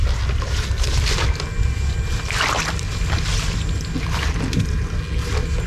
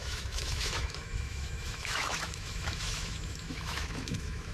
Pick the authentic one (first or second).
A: first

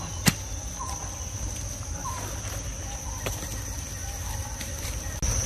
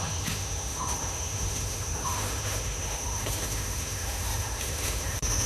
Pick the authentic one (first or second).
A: first